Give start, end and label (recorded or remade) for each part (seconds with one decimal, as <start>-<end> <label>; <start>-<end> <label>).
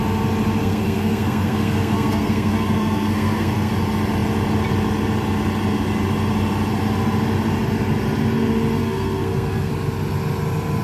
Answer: 0.0-0.6 recorded; 0.6-3.7 remade; 3.7-8.8 recorded; 8.8-9.7 remade; 9.7-10.8 recorded